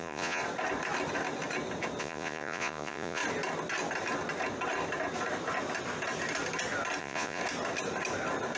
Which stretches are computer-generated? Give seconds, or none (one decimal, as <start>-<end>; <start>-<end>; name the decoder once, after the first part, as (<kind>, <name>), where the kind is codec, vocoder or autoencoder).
0.0-0.4 (vocoder, Vocos); 2.0-3.2; 7.0-7.4